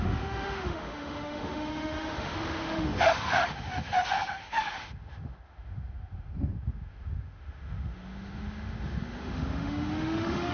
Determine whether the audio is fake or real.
fake